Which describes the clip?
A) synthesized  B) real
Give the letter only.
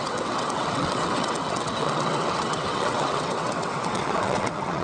A